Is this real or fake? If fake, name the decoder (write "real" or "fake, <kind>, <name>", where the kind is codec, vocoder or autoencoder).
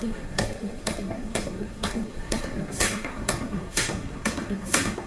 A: fake, codec, SNAC